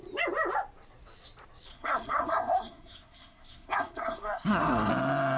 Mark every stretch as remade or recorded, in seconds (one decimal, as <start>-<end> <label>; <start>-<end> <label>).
0.0-1.7 recorded; 1.7-4.9 remade; 4.9-5.4 recorded